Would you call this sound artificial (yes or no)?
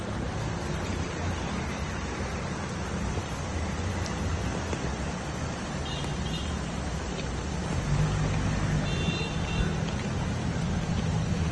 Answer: no